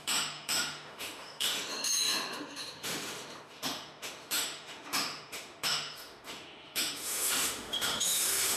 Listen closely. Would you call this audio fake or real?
fake